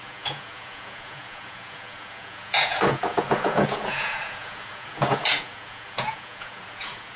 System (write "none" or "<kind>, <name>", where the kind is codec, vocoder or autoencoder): vocoder, Vocos